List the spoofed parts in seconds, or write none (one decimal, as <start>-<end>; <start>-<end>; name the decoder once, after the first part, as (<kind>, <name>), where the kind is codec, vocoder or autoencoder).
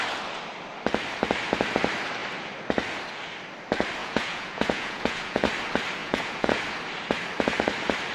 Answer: 4.0-5.5 (vocoder, Vocos); 6.0-6.6